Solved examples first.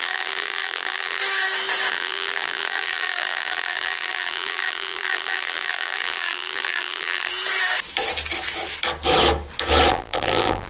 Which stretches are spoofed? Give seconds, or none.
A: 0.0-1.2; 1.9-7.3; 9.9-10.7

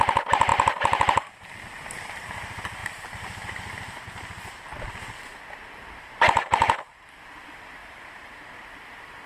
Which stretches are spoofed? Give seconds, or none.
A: 7.8-8.5

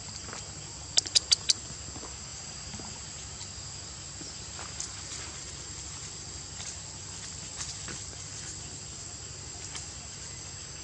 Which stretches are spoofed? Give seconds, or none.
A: none

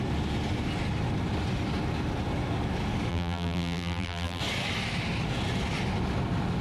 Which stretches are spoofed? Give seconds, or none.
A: 3.1-4.4

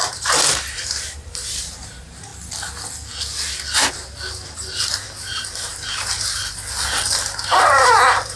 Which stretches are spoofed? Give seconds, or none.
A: 0.0-2.3; 3.9-6.4; 7.0-8.4

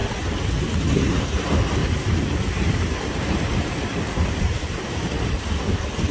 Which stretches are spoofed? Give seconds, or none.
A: 1.8-5.5

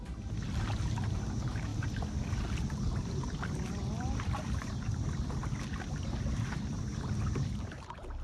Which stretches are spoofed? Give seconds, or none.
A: 0.0-1.7; 2.4-5.4; 6.0-8.2